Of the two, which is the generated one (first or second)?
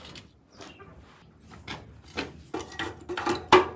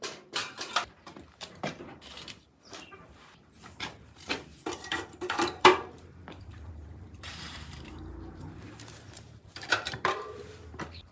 second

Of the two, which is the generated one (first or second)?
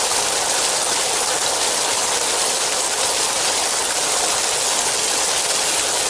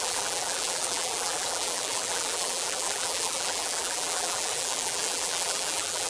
second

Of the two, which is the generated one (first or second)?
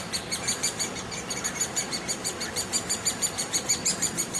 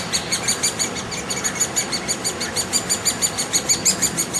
first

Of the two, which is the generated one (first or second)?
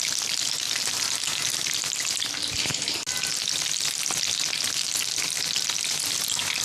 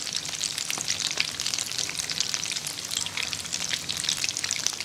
second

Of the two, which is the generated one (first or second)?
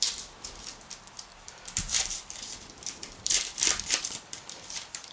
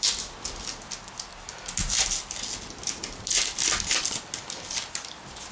first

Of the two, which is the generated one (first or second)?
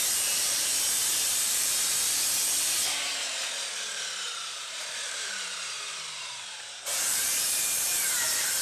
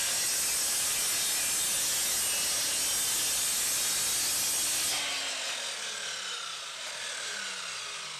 first